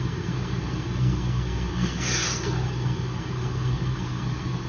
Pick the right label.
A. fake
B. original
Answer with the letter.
A